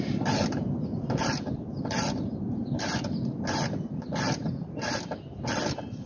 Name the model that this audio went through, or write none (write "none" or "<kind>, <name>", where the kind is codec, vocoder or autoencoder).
vocoder, BigVGAN v2